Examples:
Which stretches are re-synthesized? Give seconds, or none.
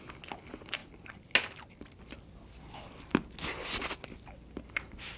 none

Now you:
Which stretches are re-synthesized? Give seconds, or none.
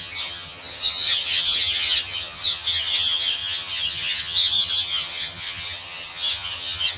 0.0-7.0 (vocoder, HiFi-GAN)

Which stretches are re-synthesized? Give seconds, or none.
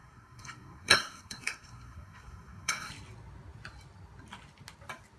0.0-2.9 (codec, SNAC)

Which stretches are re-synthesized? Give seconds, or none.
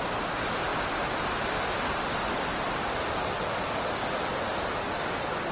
none